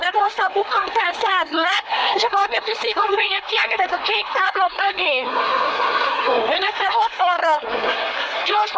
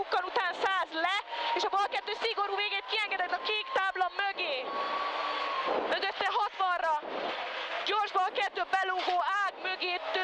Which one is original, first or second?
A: second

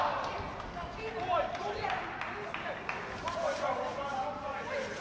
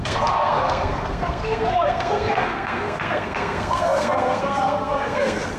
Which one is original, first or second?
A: first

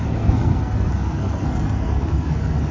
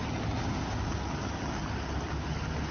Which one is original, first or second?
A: second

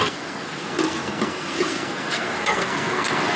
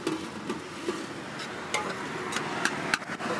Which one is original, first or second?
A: second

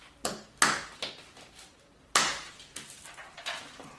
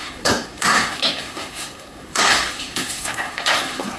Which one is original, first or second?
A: first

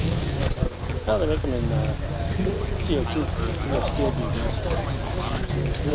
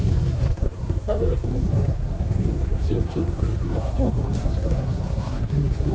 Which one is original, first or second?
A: first